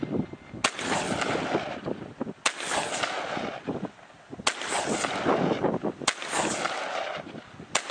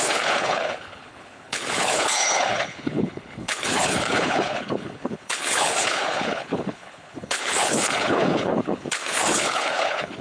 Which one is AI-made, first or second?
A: second